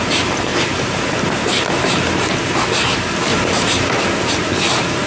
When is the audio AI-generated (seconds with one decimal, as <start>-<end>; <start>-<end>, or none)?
0.5-2.7; 3.3-3.9